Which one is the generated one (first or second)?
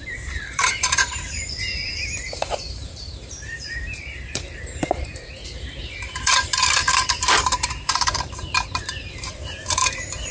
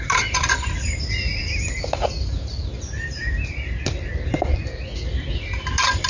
first